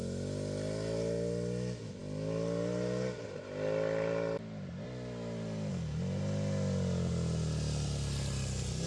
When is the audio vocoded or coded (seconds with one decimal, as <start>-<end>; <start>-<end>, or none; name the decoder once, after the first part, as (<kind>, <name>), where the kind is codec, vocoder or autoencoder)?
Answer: none